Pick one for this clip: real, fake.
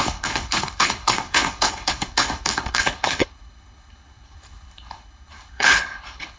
fake